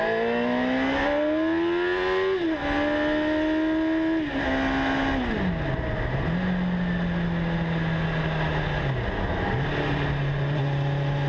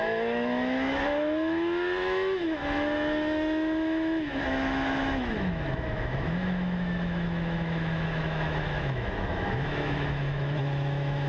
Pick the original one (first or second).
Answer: first